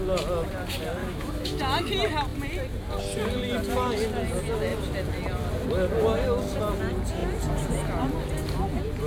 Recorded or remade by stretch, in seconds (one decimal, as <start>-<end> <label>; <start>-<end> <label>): 0.0-1.0 recorded; 1.0-1.6 remade; 1.6-9.1 recorded

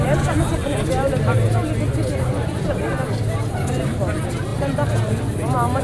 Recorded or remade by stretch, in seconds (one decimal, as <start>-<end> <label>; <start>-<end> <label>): 0.0-5.8 recorded

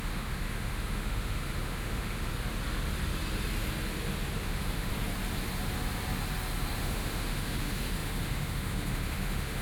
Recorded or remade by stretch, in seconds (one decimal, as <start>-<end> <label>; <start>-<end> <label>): 0.0-2.3 remade; 2.3-4.4 recorded; 4.4-4.9 remade; 4.9-6.8 recorded; 6.8-9.6 remade

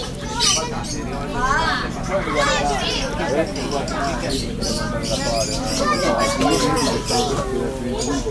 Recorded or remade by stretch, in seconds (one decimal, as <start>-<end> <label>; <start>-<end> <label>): 0.0-8.3 recorded

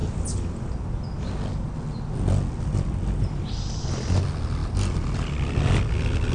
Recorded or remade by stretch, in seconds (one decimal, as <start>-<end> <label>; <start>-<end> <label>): 0.0-6.3 recorded

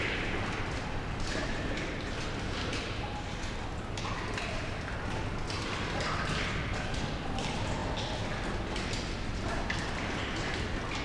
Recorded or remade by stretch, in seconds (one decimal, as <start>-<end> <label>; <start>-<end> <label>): 0.0-11.0 recorded

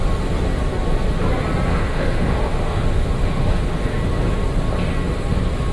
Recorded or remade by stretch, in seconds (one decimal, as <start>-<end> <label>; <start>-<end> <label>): 0.0-1.7 recorded; 1.7-4.0 remade; 4.0-5.7 recorded

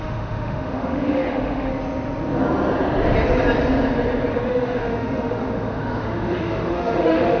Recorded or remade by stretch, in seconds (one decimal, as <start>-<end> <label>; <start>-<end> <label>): 0.0-1.7 remade; 1.7-4.3 recorded; 4.3-7.4 remade